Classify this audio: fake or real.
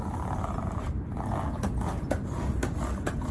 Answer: real